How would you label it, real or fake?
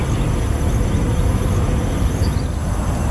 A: real